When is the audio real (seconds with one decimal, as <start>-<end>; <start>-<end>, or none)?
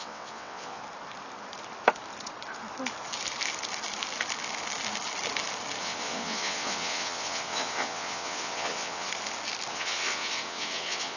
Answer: 0.8-5.8; 9.1-9.7